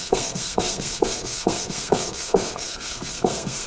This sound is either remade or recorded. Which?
remade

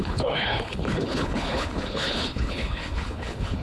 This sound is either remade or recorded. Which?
remade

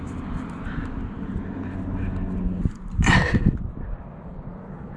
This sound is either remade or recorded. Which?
recorded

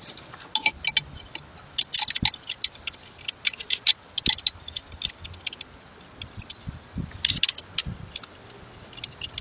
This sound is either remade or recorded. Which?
recorded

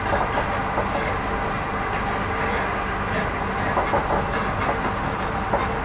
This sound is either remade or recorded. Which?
recorded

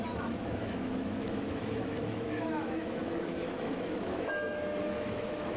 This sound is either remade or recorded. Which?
remade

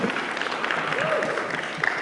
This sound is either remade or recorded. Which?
recorded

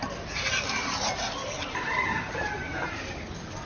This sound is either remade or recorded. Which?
recorded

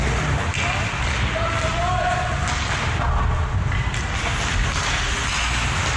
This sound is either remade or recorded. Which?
recorded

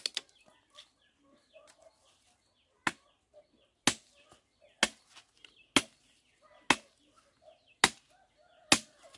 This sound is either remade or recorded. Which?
recorded